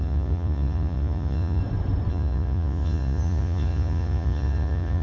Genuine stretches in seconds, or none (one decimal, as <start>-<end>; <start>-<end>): 1.6-2.1